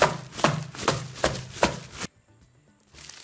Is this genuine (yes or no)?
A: yes